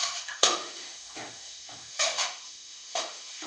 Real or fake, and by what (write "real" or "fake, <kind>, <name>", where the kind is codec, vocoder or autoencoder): fake, autoencoder, DAC-VAE